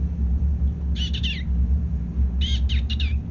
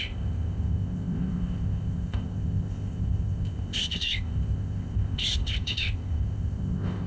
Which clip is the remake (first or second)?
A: second